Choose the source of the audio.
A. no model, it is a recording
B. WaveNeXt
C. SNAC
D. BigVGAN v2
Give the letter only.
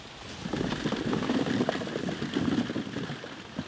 A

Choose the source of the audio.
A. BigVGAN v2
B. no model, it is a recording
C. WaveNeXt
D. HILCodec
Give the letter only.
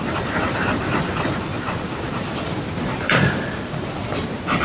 B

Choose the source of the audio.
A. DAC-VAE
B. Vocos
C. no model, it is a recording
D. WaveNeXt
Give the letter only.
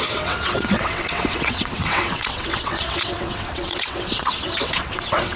D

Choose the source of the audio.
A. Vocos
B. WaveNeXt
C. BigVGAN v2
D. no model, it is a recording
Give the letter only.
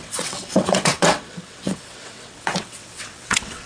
B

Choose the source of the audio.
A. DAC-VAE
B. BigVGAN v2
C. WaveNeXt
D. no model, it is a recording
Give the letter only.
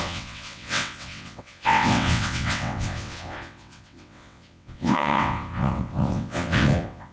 C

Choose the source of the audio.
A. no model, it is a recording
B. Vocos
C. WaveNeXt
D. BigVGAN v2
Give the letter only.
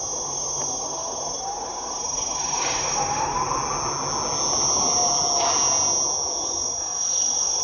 A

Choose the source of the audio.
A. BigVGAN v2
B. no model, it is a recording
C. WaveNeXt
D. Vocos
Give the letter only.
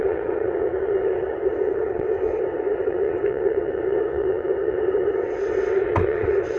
C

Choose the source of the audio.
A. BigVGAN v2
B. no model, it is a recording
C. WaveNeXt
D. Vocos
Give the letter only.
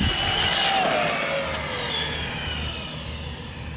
B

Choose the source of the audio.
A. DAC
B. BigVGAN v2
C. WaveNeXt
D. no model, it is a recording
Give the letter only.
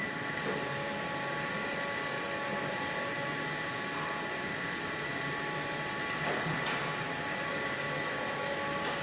D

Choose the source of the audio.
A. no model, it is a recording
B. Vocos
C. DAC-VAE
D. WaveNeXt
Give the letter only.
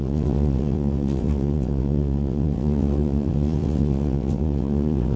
D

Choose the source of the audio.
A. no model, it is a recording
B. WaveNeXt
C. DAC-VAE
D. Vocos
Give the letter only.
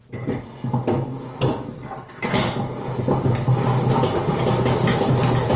A